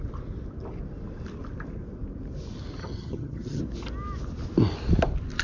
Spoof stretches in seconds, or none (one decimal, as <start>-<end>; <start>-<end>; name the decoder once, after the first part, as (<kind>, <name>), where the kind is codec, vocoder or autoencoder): 2.8-3.6 (vocoder, HiFi-GAN)